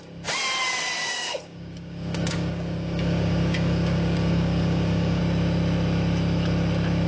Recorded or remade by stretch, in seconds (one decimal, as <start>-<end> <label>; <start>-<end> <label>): 0.0-1.0 recorded; 1.0-5.2 remade; 5.2-7.1 recorded